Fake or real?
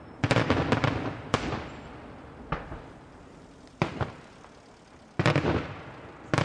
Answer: real